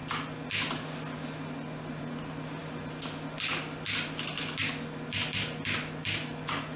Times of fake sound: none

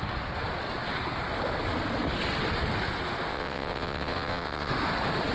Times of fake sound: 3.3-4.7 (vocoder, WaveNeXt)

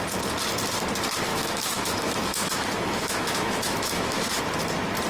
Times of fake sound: 1.3-4.4 (autoencoder, DAC-VAE)

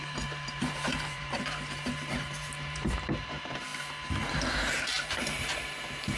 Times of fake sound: 0.0-3.7 (vocoder, BigVGAN v2); 4.3-6.2

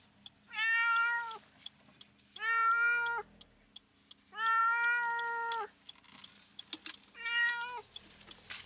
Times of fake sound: none